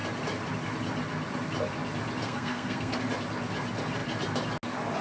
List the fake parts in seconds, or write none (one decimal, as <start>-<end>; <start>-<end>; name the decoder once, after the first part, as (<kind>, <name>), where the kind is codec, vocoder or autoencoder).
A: 2.2-3.0 (codec, SNAC)